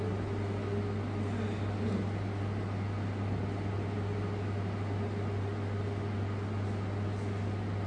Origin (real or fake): real